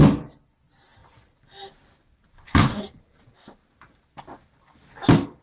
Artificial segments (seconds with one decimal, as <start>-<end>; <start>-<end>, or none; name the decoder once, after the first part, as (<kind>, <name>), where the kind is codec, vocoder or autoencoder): 1.0-4.2 (vocoder, BigVGAN v2)

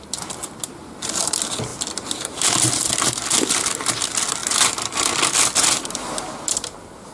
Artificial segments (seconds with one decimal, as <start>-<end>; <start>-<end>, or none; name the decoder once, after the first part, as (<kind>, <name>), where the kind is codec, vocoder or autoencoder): none

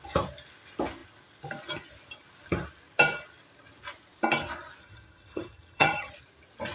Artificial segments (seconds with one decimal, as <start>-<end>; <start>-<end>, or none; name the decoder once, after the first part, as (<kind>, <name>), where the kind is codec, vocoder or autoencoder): 4.8-6.1 (vocoder, HiFi-GAN)